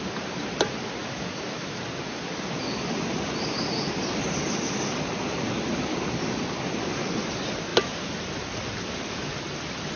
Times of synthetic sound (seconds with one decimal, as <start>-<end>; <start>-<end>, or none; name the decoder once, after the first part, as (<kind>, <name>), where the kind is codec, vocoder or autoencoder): 1.0-1.8 (autoencoder, DAC-VAE)